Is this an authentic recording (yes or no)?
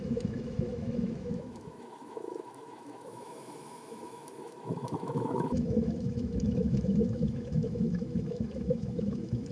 no